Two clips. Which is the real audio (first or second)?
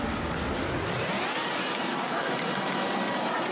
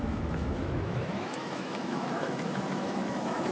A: first